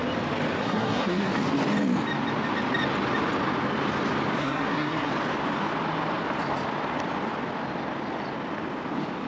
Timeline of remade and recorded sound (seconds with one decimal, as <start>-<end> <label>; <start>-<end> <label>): 0.0-0.6 recorded; 0.6-1.3 remade; 1.3-4.4 recorded; 4.4-5.1 remade; 5.1-9.3 recorded